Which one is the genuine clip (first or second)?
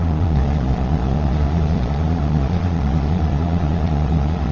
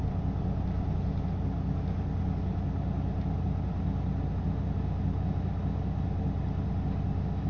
second